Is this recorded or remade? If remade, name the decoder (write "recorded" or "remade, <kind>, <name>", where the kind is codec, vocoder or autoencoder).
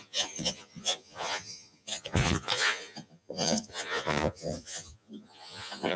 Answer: remade, vocoder, Vocos